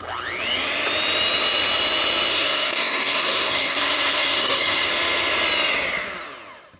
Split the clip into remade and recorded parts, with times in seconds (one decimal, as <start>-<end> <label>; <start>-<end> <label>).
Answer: 0.0-2.3 recorded; 2.3-4.9 remade; 4.9-6.8 recorded